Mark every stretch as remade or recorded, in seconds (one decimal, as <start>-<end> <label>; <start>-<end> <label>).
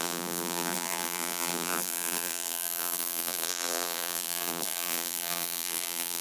0.0-6.2 remade